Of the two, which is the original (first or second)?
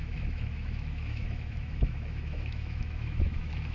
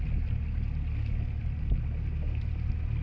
second